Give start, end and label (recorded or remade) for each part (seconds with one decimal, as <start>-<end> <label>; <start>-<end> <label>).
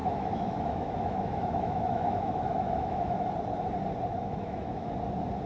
0.0-3.3 remade; 3.3-4.1 recorded; 4.1-4.9 remade; 4.9-5.5 recorded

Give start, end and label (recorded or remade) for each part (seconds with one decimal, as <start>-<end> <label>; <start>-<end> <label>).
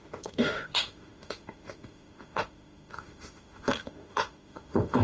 0.0-5.0 remade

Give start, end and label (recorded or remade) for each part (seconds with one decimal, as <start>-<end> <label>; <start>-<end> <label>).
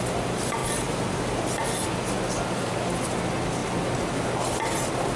0.0-5.2 recorded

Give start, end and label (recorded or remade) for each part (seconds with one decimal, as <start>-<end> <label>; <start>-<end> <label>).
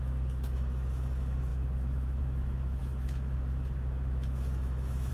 0.0-5.1 remade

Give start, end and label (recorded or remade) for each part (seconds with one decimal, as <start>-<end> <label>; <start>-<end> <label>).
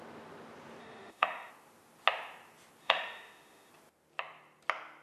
0.0-0.8 recorded; 0.8-1.5 remade; 1.5-2.8 recorded; 2.8-3.7 remade; 3.7-5.0 recorded